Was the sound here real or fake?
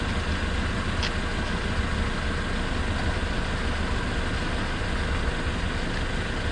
real